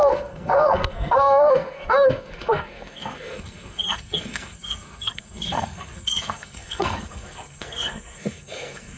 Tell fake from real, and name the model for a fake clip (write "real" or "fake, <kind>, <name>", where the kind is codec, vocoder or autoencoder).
fake, codec, SNAC